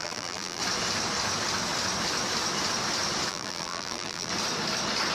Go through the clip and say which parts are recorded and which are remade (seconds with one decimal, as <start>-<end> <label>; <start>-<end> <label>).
0.0-0.6 remade; 0.6-3.3 recorded; 3.3-4.3 remade; 4.3-5.1 recorded